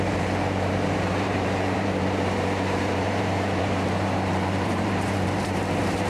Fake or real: fake